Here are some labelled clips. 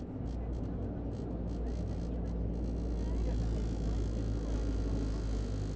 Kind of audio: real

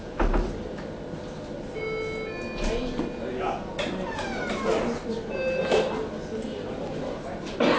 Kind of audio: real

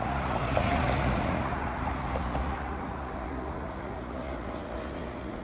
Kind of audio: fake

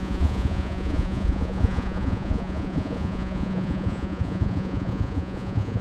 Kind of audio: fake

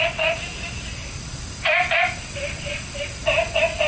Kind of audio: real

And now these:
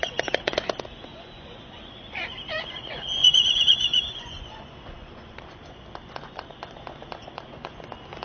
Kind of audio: fake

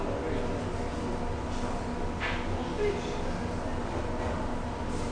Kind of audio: real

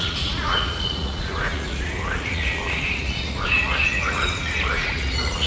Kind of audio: fake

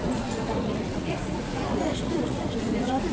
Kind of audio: fake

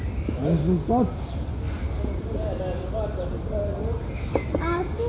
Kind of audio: real